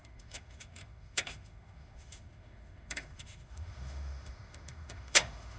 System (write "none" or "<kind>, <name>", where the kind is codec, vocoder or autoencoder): autoencoder, DAC-VAE